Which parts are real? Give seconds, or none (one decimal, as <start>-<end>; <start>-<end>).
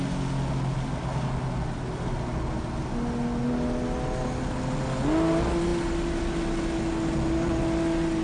0.0-8.2